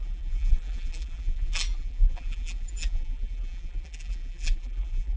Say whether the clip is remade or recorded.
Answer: remade